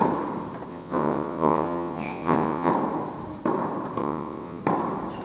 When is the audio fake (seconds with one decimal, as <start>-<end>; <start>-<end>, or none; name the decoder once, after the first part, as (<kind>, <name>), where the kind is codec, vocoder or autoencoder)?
0.7-2.7 (vocoder, WaveNeXt); 4.0-4.6

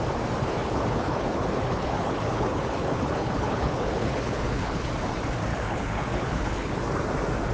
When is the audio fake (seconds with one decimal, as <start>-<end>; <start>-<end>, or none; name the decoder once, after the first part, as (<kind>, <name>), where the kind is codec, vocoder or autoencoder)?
0.4-4.9 (codec, HILCodec); 5.5-6.8

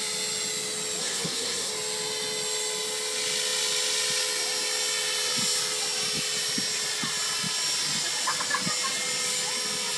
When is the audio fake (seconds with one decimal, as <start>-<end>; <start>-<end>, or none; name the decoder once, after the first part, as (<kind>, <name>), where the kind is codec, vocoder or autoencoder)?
1.0-1.7 (codec, SNAC)

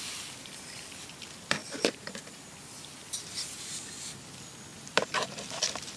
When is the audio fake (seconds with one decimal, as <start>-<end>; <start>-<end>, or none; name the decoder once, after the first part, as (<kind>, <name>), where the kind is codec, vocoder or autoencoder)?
1.6-2.5 (vocoder, BigVGAN v2); 4.7-5.4

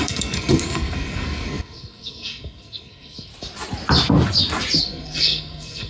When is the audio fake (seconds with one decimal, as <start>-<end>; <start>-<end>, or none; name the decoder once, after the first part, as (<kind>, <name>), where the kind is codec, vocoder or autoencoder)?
0.0-3.3 (codec, SNAC); 4.8-5.9

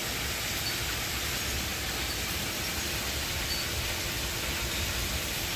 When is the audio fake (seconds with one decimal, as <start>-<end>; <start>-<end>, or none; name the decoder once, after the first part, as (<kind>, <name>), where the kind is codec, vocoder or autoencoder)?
none

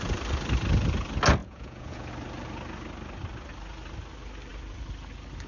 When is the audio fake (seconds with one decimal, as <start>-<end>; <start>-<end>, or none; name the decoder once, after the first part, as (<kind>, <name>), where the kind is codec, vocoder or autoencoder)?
1.4-2.1 (vocoder, Vocos)